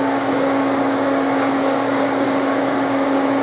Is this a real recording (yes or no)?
no